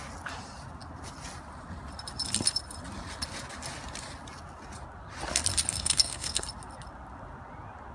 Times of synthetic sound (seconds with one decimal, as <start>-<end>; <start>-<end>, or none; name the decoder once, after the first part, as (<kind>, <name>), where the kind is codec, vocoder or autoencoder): 5.7-6.4 (codec, SNAC)